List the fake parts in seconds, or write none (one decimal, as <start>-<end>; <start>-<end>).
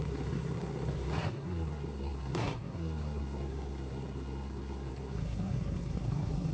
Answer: 0.0-6.5